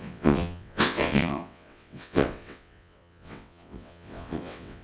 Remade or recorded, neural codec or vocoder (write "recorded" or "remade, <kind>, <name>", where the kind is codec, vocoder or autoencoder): remade, vocoder, WaveNeXt